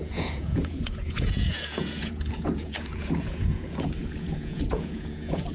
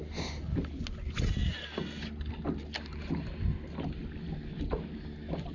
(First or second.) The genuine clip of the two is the second